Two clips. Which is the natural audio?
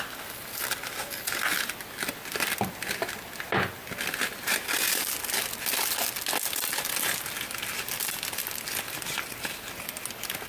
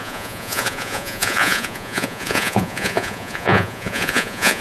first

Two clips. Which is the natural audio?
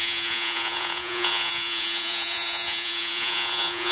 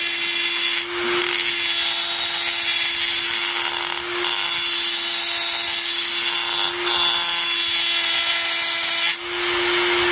second